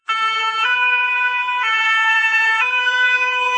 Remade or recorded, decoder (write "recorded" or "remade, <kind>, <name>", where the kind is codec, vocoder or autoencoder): remade, vocoder, BigVGAN v2